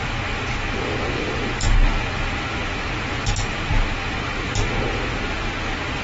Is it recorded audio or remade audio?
recorded